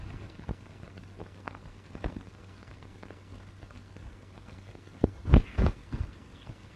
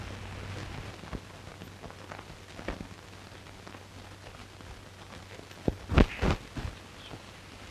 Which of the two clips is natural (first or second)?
second